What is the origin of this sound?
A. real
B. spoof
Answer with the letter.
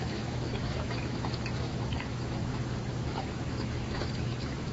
B